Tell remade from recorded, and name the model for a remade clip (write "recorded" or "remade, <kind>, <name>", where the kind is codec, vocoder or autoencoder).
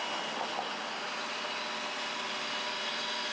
recorded